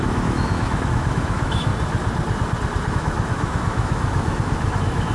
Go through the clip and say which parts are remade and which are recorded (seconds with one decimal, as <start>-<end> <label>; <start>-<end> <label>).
0.0-1.7 remade; 1.7-2.9 recorded; 2.9-5.1 remade